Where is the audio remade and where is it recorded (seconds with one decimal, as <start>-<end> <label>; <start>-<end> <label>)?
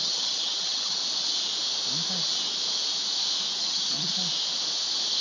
0.0-1.0 remade; 1.0-3.6 recorded; 3.6-4.1 remade; 4.1-5.2 recorded